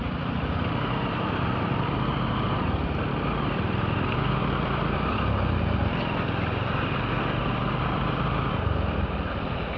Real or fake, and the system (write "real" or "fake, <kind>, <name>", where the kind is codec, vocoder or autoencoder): fake, vocoder, BigVGAN v2